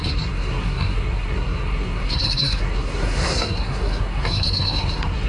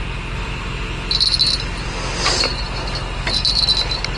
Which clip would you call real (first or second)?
second